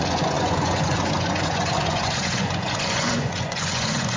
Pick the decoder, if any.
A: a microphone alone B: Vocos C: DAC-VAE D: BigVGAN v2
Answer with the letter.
B